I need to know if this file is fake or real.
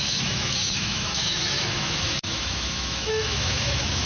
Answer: fake